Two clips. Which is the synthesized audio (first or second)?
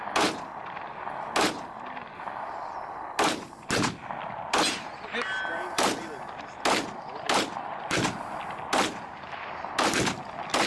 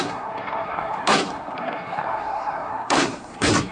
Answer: second